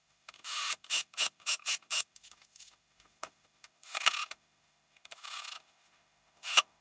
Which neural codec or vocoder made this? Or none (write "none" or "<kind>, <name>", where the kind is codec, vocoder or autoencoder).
autoencoder, DAC-VAE